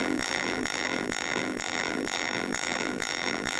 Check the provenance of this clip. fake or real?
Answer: fake